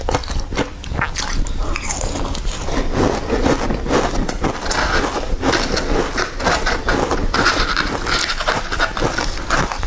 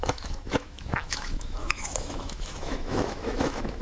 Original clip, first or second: first